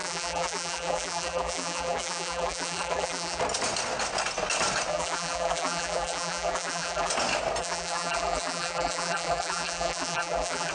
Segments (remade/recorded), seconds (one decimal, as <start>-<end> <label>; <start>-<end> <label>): 0.0-3.4 remade; 3.4-4.9 recorded; 4.9-7.1 remade; 7.1-7.6 recorded; 7.6-10.7 remade